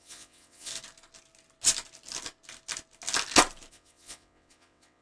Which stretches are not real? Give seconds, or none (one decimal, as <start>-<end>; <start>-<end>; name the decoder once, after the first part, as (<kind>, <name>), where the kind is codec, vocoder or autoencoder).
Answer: 0.0-0.7 (vocoder, WaveNeXt); 3.7-5.0